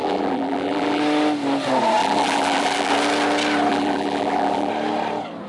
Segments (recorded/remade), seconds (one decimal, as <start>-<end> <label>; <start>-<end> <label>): 0.0-1.0 remade; 1.0-2.0 recorded; 2.0-2.9 remade; 2.9-3.7 recorded; 3.7-4.7 remade; 4.7-5.5 recorded